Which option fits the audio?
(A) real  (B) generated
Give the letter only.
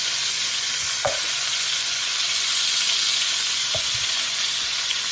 B